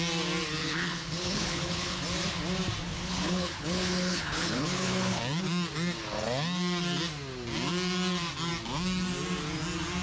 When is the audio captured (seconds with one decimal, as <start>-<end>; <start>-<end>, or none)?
0.0-0.6; 2.0-2.9; 5.2-10.0